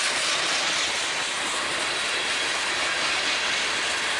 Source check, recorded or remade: recorded